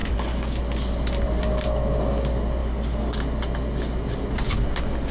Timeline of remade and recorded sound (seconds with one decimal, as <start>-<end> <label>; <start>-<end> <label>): 0.0-0.6 remade; 0.6-2.6 recorded; 2.6-3.2 remade; 3.2-5.1 recorded